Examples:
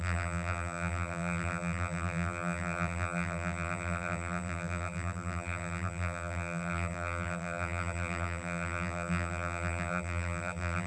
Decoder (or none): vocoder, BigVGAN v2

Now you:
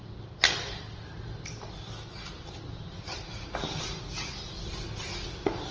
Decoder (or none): none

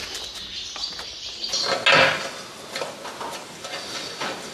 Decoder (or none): none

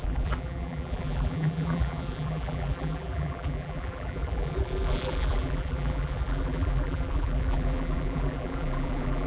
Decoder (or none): vocoder, BigVGAN v2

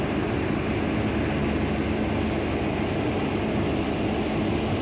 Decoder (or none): none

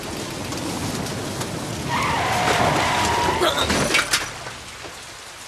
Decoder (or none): none